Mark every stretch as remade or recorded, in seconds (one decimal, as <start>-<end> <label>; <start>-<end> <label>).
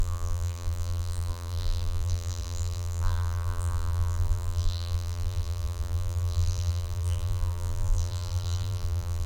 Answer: 0.0-9.3 remade